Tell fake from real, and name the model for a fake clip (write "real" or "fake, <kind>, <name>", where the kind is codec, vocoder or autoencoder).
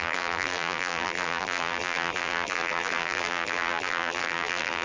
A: fake, vocoder, BigVGAN v2